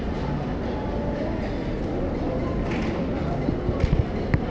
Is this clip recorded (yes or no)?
yes